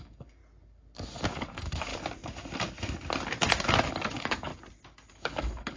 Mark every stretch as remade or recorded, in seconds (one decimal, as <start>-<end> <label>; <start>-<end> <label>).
0.0-0.4 remade; 0.4-1.3 recorded; 1.3-1.9 remade; 1.9-3.9 recorded; 3.9-4.5 remade; 4.5-5.1 recorded; 5.1-5.8 remade